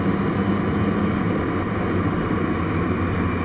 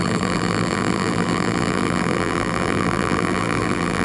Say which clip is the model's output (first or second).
second